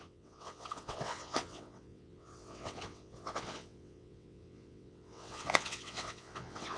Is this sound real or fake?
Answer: fake